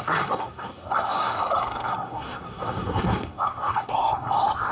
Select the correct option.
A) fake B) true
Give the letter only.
A